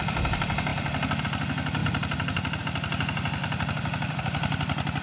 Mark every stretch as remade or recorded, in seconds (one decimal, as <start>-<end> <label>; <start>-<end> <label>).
0.0-3.4 recorded; 3.4-4.2 remade; 4.2-5.0 recorded